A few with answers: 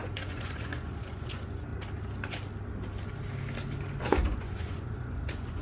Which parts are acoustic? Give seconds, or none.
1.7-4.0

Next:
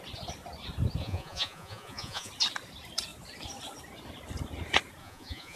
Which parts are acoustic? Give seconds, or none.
0.0-1.0; 2.3-5.0

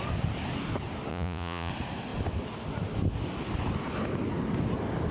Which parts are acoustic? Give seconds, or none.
0.0-1.1; 1.7-5.1

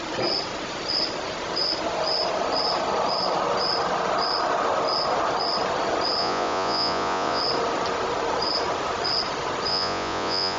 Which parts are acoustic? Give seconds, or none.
0.0-6.2; 7.4-9.7